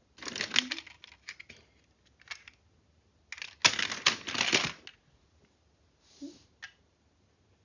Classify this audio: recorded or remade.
recorded